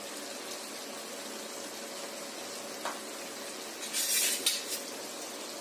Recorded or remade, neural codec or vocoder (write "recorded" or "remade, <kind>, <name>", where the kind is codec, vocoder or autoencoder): recorded